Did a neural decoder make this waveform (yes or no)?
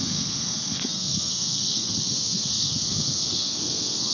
yes